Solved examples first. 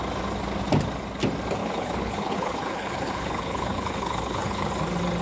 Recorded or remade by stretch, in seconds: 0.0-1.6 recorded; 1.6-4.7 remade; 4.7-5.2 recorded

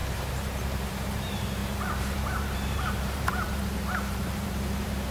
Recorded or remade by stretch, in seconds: 0.0-5.1 remade

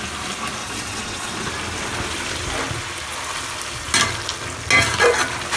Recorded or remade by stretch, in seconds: 0.0-0.6 recorded; 0.6-1.5 remade; 1.5-5.6 recorded

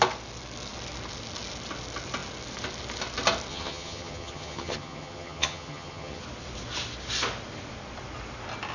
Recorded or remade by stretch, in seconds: 0.0-3.5 recorded; 3.5-6.2 remade; 6.2-8.7 recorded

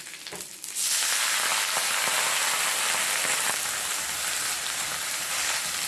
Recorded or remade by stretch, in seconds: 0.0-5.9 recorded

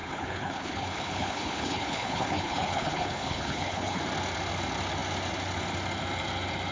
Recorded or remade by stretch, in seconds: 0.0-4.0 remade; 4.0-6.7 recorded